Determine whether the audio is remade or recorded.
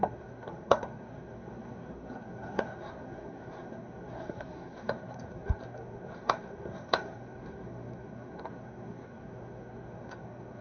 remade